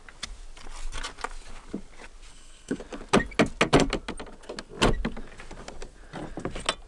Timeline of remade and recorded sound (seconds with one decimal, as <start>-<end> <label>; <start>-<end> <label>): 0.0-2.3 recorded; 2.3-2.8 remade; 2.8-6.9 recorded